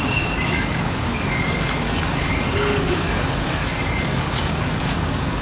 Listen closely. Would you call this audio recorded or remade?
remade